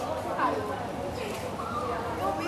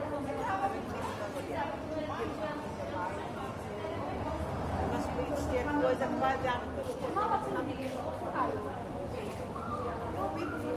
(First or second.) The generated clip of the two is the first